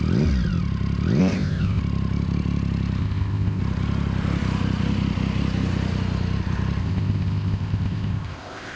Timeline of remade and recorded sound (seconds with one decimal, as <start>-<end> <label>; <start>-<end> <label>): 0.0-1.2 recorded; 1.2-1.8 remade; 1.8-3.0 recorded; 3.0-3.6 remade; 3.6-6.8 recorded; 6.8-8.8 remade